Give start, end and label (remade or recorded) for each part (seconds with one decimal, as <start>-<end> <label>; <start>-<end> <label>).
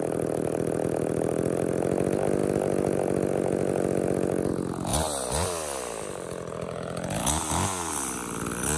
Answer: 0.0-8.8 recorded